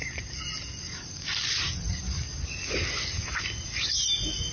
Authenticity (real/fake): real